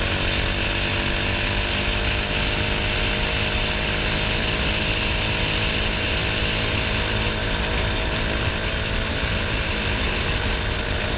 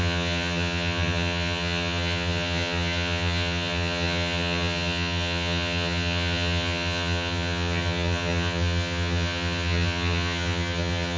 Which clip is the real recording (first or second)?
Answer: first